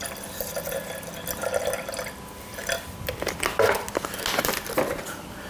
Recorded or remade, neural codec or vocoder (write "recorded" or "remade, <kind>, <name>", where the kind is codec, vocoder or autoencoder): recorded